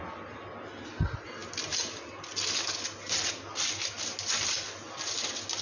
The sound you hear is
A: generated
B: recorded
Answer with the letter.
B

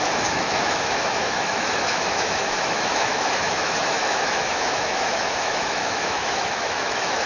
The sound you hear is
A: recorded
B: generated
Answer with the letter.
B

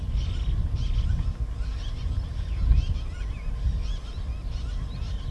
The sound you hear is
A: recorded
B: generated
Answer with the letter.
A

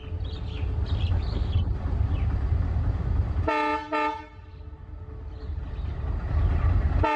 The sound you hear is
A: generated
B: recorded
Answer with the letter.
B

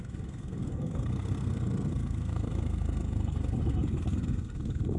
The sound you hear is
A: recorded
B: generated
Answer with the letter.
B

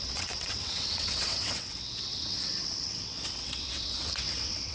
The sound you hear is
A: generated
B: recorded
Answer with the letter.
A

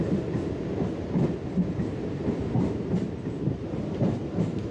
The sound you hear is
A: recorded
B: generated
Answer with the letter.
B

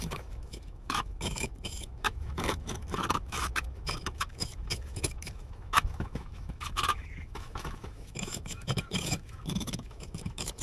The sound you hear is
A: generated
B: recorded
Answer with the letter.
A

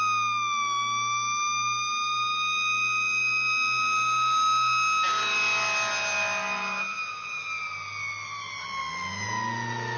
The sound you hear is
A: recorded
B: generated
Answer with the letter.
A